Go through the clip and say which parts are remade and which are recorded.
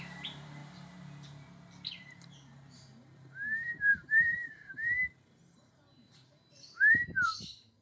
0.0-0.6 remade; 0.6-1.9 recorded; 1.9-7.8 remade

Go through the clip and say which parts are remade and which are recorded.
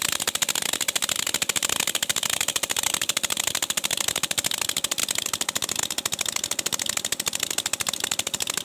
0.0-8.6 recorded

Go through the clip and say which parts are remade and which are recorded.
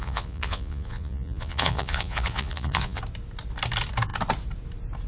0.0-3.0 remade; 3.0-5.1 recorded